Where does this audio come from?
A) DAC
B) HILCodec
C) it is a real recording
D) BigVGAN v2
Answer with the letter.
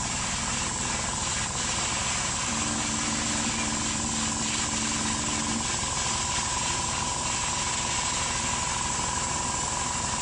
C